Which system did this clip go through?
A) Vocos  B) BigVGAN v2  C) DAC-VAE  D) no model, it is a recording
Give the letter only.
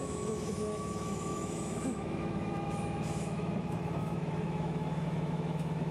C